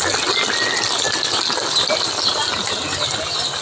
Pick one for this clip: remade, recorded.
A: recorded